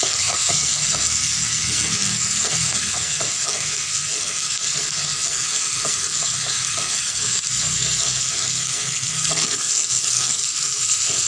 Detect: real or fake fake